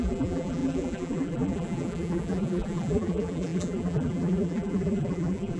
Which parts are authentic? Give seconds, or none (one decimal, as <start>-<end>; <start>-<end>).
none